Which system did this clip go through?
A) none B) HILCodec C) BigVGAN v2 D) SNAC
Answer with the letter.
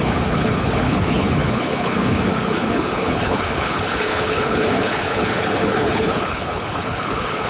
B